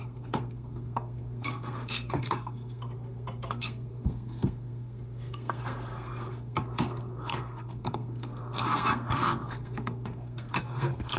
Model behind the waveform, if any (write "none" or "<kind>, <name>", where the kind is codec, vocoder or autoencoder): codec, SNAC